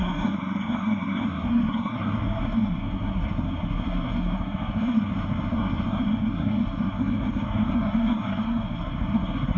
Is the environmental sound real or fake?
fake